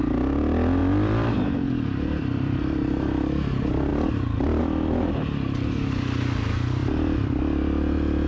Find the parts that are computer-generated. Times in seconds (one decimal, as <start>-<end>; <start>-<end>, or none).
0.8-2.6; 6.8-7.4